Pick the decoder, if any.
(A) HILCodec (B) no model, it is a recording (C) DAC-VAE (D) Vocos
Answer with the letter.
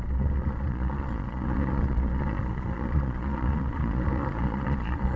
D